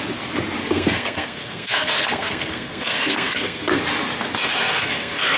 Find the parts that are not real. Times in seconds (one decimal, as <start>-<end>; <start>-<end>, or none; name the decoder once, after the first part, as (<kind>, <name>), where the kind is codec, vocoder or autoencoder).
0.6-3.8 (codec, SNAC); 4.4-5.4